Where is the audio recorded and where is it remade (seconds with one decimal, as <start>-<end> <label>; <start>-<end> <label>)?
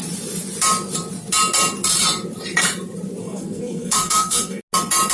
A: 0.0-3.2 recorded; 3.2-4.6 remade; 4.6-5.1 recorded